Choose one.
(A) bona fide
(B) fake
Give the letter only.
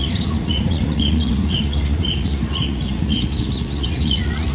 B